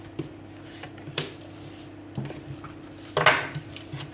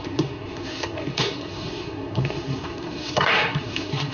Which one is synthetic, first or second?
second